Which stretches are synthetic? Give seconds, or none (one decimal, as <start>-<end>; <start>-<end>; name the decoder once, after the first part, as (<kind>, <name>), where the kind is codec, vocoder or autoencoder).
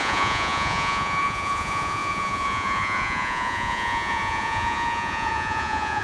0.0-6.0 (vocoder, Vocos)